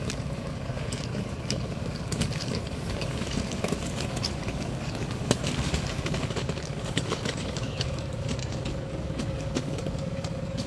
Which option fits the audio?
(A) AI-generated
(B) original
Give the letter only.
A